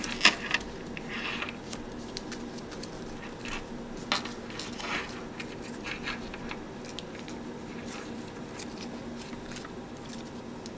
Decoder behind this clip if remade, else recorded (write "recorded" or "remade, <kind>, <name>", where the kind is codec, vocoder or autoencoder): recorded